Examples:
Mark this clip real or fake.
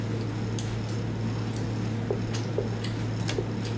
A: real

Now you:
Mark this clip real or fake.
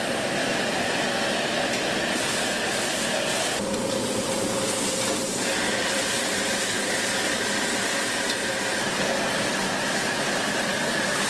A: real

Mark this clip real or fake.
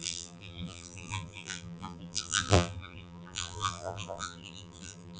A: fake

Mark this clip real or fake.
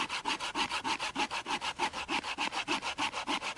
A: real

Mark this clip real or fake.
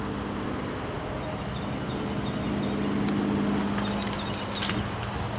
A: real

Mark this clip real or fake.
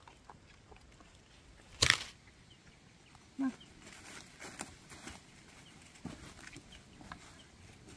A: real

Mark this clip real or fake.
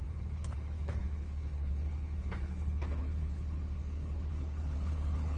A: fake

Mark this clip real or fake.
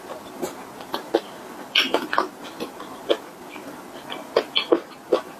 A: real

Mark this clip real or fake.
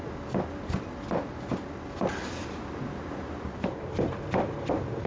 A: real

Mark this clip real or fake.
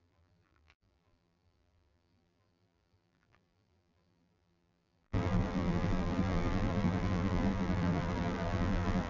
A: fake